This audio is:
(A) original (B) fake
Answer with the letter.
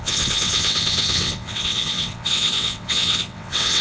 B